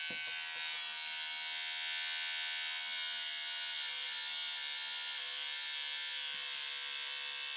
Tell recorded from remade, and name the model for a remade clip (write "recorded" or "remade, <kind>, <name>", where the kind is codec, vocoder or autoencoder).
recorded